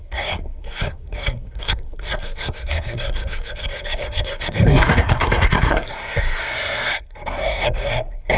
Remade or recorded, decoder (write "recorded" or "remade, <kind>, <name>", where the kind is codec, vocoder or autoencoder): remade, codec, SNAC